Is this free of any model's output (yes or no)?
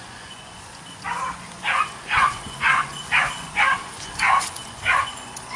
no